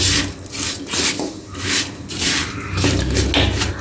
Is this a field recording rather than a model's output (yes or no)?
yes